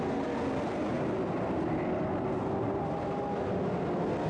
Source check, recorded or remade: recorded